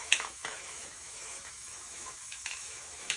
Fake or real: fake